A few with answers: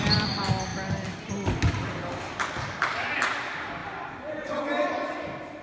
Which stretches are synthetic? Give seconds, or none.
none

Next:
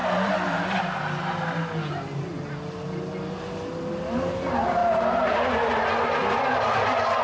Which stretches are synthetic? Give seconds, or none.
none

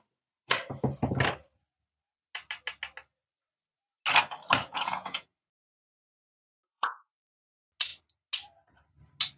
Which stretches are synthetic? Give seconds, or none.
4.6-7.2 (vocoder, Vocos)

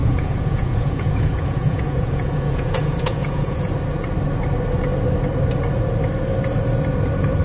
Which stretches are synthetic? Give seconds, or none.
0.0-3.7 (vocoder, Vocos)

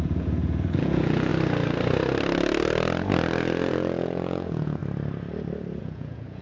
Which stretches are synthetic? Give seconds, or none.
0.0-1.3 (vocoder, Vocos); 3.7-4.8; 5.8-6.4